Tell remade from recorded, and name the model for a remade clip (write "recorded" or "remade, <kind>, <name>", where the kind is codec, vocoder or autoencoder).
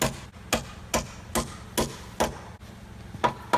recorded